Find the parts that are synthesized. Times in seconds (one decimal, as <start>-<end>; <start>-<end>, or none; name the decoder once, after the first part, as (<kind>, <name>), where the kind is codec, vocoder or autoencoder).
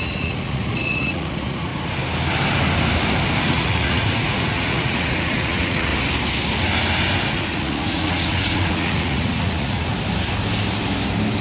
0.0-1.7 (vocoder, Vocos); 3.4-5.9; 7.3-9.9